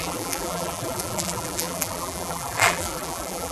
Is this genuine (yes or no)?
no